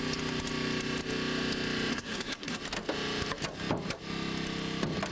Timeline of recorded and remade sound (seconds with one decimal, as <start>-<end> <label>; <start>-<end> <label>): 0.0-1.9 recorded; 1.9-2.6 remade; 2.6-5.1 recorded